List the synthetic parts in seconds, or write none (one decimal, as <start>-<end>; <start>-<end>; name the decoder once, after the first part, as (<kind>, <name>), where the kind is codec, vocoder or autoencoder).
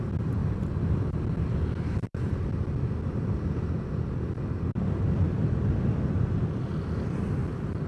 none